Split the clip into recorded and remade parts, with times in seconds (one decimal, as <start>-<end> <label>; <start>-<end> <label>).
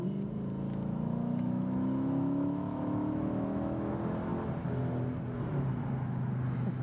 0.0-0.7 recorded; 0.7-3.9 remade; 3.9-6.8 recorded